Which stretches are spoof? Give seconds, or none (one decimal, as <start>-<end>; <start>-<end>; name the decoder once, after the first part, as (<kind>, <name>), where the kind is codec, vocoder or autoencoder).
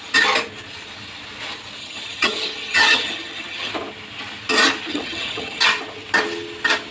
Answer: 1.8-3.7 (vocoder, HiFi-GAN); 4.9-5.6